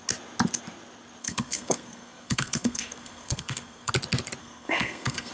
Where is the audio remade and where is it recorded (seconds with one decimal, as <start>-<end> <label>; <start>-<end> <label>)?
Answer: 0.0-1.2 recorded; 1.2-3.9 remade; 3.9-4.4 recorded; 4.4-5.3 remade